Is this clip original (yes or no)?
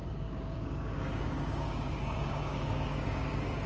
no